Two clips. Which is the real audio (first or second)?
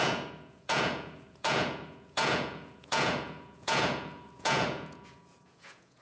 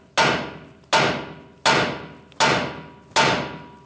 second